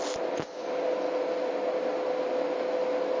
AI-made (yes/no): no